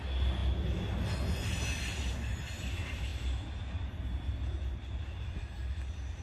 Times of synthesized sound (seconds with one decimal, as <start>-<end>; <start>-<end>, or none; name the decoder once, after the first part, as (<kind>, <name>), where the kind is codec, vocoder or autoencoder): none